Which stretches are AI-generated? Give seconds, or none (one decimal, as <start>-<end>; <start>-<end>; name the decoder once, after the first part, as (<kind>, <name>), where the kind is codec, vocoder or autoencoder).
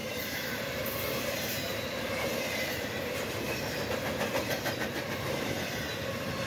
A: 0.0-3.9 (vocoder, BigVGAN v2); 4.4-5.6